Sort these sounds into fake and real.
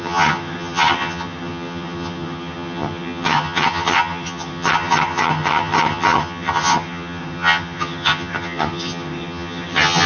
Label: fake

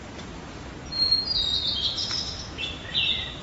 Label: real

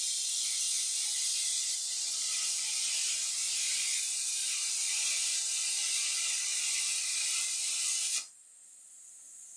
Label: real